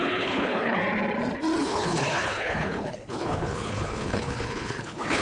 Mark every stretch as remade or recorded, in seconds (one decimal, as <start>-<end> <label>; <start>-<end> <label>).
0.0-0.8 remade; 0.8-1.6 recorded; 1.6-5.2 remade